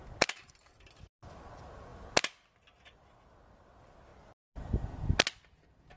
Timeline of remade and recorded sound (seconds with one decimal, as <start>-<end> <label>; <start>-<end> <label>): 0.0-6.0 recorded